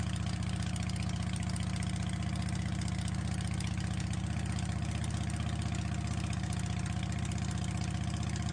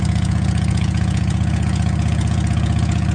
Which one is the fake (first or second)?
second